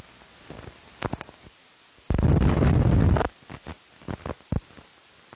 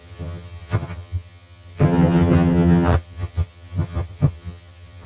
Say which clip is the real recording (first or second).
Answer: first